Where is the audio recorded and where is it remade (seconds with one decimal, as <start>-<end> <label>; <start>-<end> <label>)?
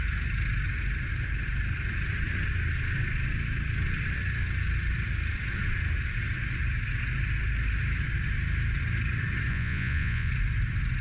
0.0-9.5 recorded; 9.5-10.3 remade; 10.3-11.0 recorded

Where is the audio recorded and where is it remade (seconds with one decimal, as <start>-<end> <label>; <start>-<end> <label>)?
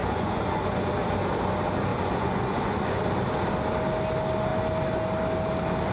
0.0-0.9 remade; 0.9-1.9 recorded; 1.9-3.0 remade; 3.0-5.9 recorded